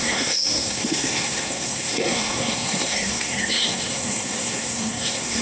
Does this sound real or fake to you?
fake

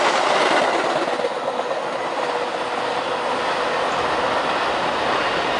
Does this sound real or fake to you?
real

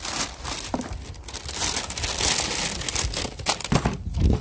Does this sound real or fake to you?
real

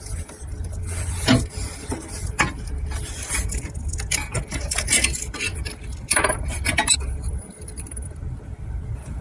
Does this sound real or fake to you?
real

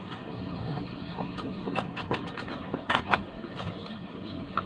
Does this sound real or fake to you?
fake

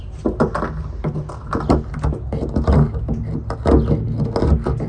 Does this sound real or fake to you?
real